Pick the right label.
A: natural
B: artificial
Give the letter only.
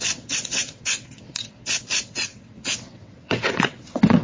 B